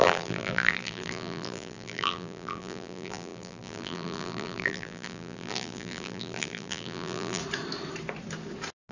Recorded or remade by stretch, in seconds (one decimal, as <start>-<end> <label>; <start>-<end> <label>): 0.0-7.4 remade; 7.4-8.9 recorded